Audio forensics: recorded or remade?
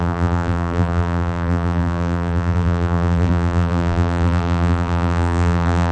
remade